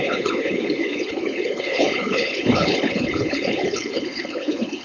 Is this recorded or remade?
remade